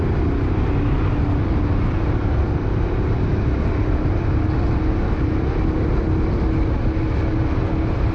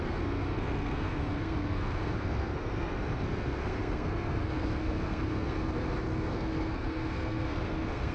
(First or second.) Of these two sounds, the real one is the first